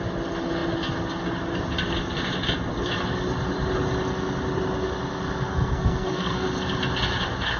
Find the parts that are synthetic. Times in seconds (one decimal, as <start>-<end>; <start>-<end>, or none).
5.5-6.7